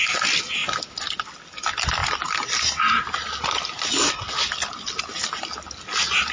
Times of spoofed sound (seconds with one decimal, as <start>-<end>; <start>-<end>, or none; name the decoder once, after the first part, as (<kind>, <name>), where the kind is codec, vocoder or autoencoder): none